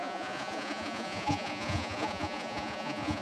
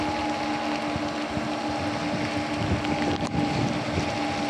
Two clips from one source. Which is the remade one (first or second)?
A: first